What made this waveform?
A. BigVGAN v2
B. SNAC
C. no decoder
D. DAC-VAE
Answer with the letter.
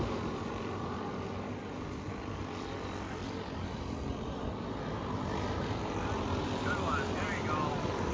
C